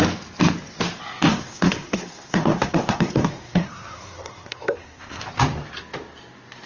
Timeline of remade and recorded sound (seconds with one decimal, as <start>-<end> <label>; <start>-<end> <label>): 0.0-1.3 recorded; 1.3-5.3 remade; 5.3-6.7 recorded